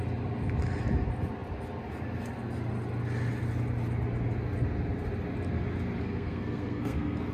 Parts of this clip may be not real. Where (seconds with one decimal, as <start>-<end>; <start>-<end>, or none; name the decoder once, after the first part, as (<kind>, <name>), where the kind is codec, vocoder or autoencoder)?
6.0-7.3 (codec, SNAC)